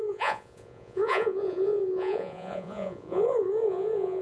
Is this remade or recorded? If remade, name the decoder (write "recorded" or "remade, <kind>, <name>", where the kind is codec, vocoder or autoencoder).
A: remade, vocoder, Vocos